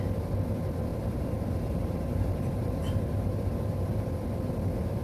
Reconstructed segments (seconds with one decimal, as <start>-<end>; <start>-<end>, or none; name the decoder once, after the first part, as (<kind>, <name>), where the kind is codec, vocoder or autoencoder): 0.9-3.9 (vocoder, BigVGAN v2)